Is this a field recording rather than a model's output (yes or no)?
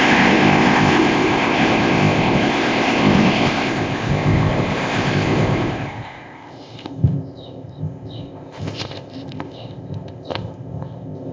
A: no